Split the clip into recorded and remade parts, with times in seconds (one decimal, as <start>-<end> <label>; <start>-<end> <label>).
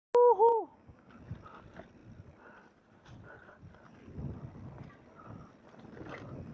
0.0-0.5 recorded; 0.5-1.1 remade; 1.1-6.5 recorded